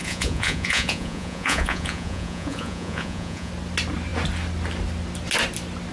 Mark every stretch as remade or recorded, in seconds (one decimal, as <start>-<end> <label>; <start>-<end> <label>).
0.0-3.5 remade; 3.5-5.9 recorded